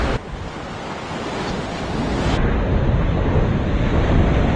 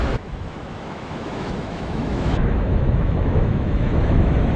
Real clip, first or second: first